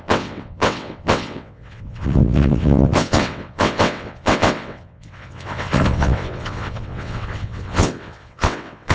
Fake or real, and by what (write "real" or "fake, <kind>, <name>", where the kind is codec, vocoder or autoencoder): fake, vocoder, WaveNeXt